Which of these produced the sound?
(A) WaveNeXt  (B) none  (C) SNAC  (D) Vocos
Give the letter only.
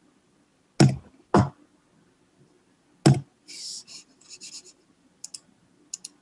B